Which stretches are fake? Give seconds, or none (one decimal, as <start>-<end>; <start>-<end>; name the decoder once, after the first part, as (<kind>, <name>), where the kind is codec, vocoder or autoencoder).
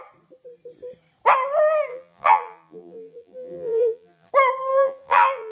1.9-4.3 (vocoder, BigVGAN v2); 4.7-5.5